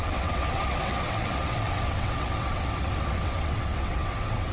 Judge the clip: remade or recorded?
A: remade